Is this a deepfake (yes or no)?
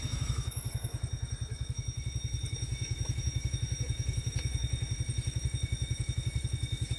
yes